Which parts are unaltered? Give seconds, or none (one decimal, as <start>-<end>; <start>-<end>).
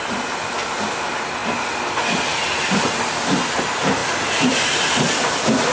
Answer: 1.4-2.8